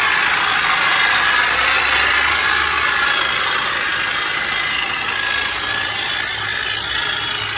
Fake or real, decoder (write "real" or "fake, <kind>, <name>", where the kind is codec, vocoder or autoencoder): real